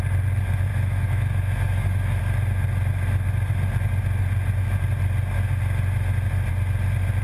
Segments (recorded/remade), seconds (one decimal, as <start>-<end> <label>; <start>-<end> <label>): 0.0-0.7 recorded; 0.7-2.2 remade; 2.2-7.2 recorded